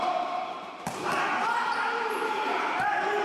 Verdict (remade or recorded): remade